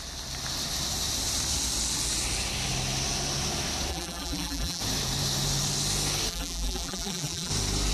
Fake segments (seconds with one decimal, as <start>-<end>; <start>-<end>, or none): 3.9-4.8; 6.3-7.5